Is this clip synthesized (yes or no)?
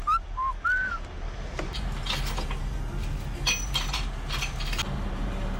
no